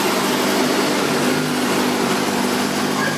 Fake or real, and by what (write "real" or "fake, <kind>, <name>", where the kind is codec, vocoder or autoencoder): real